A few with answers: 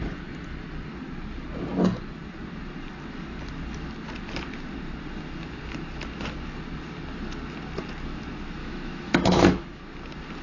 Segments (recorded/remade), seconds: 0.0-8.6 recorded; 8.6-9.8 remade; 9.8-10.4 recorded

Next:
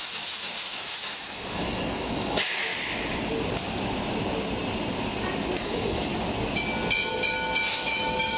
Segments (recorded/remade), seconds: 0.0-2.7 remade; 2.7-5.6 recorded; 5.6-6.1 remade; 6.1-7.7 recorded; 7.7-8.4 remade

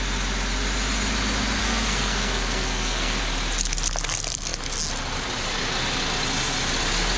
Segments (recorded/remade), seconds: 0.0-1.6 recorded; 1.6-3.2 remade; 3.2-7.2 recorded